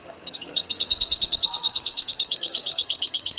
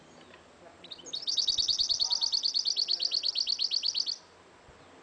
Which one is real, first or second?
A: second